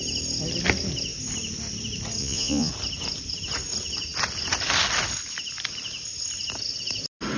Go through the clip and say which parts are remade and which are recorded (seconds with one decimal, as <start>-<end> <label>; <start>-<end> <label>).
0.0-2.2 recorded; 2.2-2.7 remade; 2.7-7.4 recorded